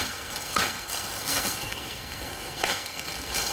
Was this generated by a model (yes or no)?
yes